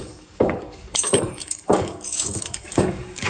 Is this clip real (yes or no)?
no